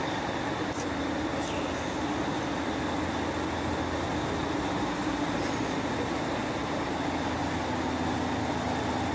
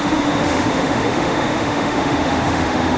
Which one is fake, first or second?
second